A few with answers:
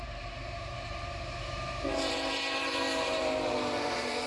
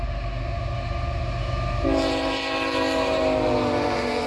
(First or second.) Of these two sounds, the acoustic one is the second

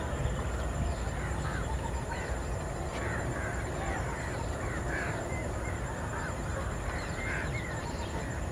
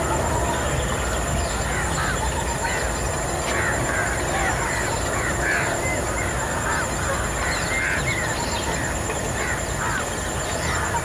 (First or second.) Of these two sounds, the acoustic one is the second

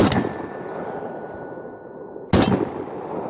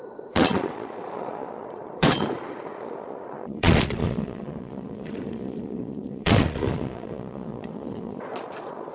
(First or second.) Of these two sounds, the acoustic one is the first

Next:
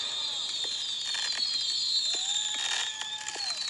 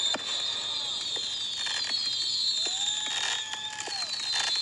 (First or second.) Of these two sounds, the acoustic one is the second